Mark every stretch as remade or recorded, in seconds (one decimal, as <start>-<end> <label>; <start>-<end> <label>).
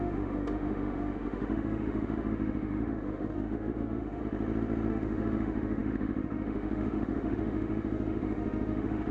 0.0-4.2 remade; 4.2-4.9 recorded; 4.9-9.1 remade